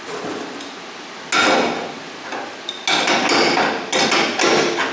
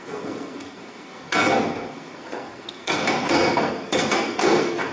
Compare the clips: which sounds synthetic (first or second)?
second